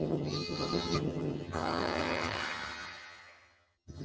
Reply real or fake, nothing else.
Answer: fake